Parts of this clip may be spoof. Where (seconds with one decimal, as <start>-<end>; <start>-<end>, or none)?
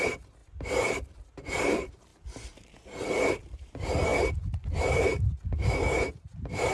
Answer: 0.0-0.4; 0.9-2.1; 3.3-4.1; 6.1-6.7